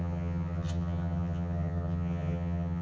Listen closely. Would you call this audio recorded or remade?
remade